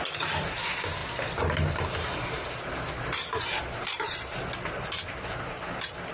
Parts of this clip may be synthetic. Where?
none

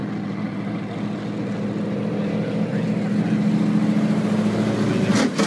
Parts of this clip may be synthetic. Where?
none